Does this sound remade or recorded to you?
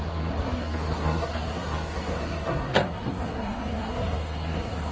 remade